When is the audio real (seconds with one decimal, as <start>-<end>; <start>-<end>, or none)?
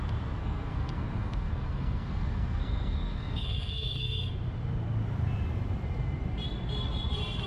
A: 0.0-0.4; 4.3-7.5